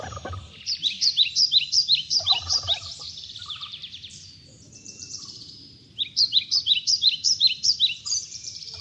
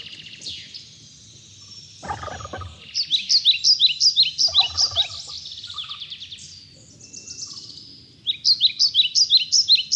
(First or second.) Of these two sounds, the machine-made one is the first